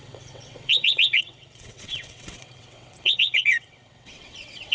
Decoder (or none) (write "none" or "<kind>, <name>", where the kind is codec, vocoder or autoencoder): vocoder, WaveNeXt